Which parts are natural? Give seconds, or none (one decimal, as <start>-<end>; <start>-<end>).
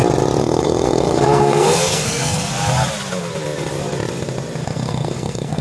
0.0-0.4; 2.5-4.6